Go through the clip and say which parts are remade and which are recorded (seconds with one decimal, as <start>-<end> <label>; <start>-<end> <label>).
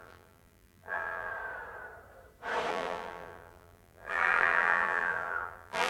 0.0-1.3 remade; 1.3-2.7 recorded; 2.7-5.9 remade